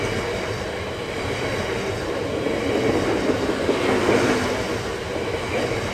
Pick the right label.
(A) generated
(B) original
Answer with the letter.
B